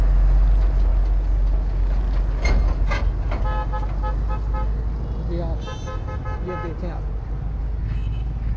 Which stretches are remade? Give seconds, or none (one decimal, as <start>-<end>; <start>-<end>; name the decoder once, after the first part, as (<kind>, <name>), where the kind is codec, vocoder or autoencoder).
none